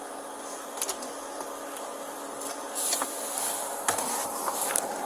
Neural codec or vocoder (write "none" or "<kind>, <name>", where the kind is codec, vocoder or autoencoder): none